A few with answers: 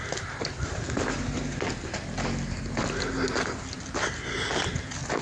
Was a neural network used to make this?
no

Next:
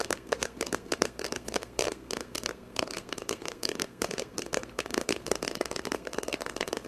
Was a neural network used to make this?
yes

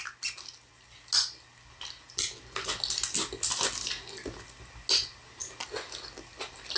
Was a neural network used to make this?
no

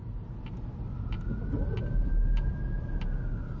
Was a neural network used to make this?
no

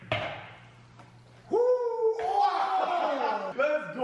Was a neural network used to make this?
no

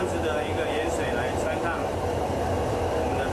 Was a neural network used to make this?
yes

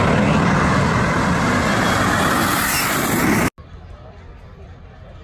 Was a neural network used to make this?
no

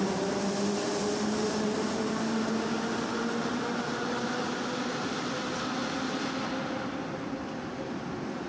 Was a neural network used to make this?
no